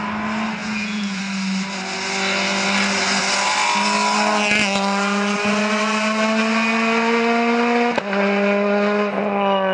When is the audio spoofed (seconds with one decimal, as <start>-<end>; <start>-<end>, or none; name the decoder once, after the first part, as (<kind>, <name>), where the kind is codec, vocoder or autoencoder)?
0.6-1.2 (vocoder, Vocos)

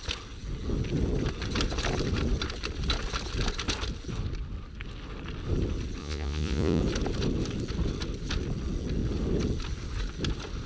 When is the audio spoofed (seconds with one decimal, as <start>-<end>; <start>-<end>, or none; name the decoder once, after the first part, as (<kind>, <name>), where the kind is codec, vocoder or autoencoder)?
6.0-6.8 (vocoder, Vocos)

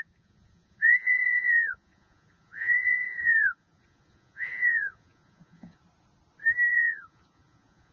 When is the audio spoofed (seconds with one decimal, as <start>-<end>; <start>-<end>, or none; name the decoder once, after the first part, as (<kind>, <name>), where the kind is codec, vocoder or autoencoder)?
0.0-5.8 (vocoder, Vocos); 6.7-7.9